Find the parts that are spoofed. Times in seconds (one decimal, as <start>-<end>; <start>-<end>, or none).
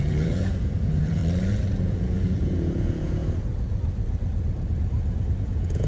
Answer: 0.0-1.2; 1.8-3.2; 5.4-5.9